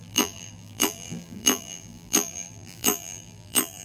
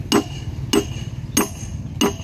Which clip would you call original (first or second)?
second